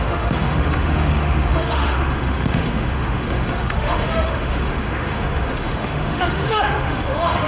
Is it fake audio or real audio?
fake